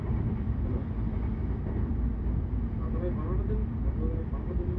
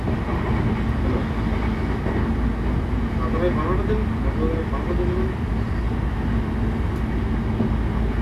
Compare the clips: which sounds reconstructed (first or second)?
first